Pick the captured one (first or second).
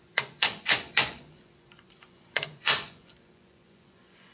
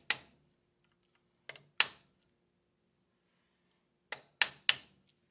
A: second